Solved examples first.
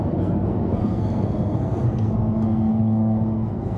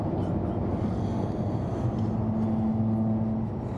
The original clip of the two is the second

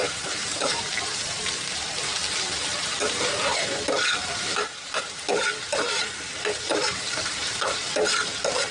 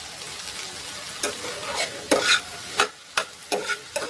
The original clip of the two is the second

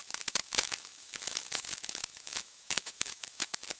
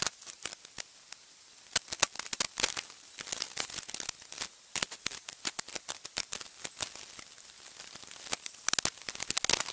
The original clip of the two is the second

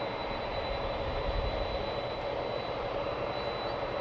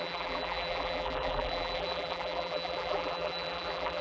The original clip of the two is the first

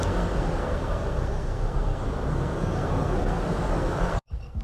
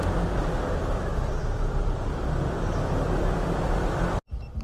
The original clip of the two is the second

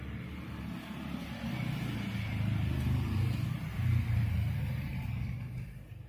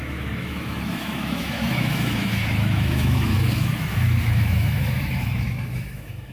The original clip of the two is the first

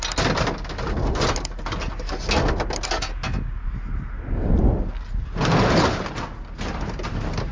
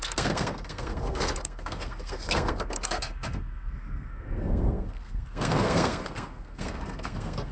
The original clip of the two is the first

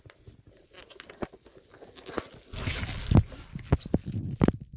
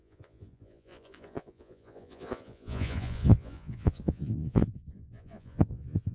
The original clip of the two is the first